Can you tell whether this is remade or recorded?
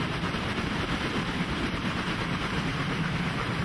remade